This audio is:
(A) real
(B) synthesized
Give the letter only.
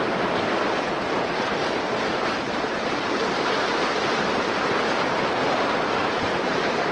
B